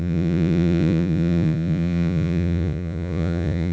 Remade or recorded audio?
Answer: remade